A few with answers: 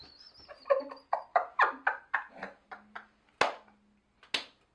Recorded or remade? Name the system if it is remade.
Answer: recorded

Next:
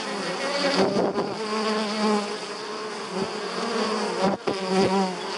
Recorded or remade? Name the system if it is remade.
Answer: recorded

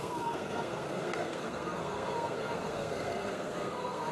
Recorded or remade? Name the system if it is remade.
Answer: remade, codec, SNAC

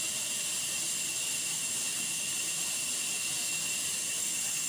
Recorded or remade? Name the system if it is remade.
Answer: recorded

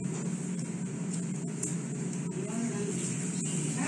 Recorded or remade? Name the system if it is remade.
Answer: recorded